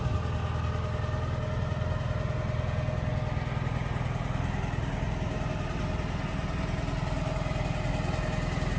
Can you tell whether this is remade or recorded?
recorded